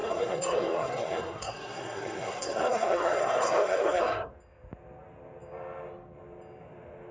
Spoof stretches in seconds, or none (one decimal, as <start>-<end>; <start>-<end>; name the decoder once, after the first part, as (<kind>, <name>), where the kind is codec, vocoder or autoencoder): 0.0-4.3 (codec, SNAC)